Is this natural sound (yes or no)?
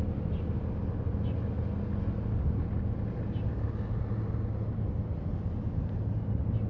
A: yes